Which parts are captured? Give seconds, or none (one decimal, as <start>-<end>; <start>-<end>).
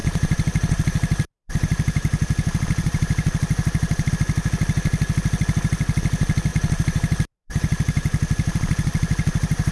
4.1-6.5